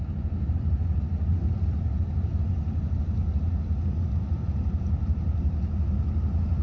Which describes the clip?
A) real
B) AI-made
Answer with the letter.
A